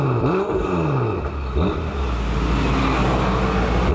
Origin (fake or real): real